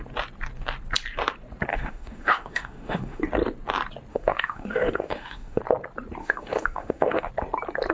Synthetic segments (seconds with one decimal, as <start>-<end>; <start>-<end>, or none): 1.7-3.2; 4.1-5.6; 6.2-7.3